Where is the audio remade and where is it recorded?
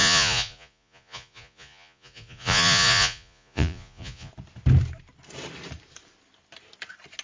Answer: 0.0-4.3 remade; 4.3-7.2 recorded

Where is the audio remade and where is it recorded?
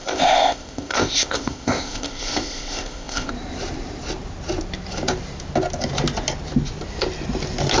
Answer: 0.0-3.3 remade; 3.3-7.8 recorded